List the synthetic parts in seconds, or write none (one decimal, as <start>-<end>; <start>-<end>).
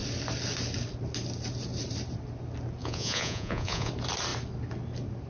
2.8-3.9